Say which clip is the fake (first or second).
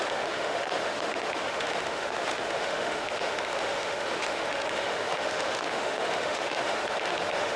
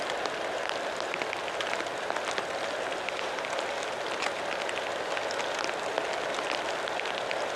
first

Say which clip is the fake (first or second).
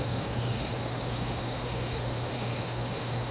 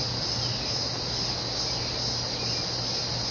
first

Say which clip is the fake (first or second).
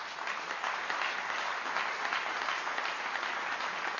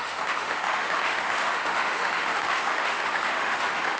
second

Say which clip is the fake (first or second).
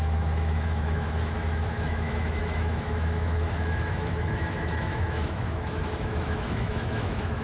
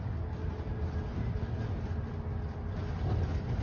first